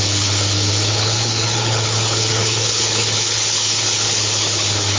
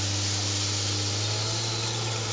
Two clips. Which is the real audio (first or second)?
second